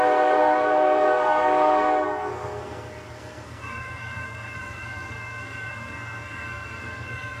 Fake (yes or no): yes